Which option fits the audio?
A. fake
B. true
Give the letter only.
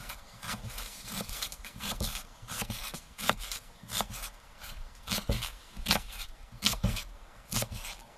A